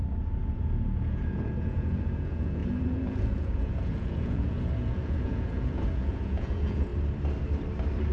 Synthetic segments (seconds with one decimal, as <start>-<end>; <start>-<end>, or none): 0.0-6.9